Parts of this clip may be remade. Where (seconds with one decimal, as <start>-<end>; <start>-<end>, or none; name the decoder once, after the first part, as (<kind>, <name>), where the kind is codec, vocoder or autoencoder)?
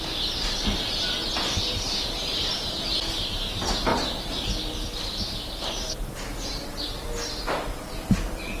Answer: none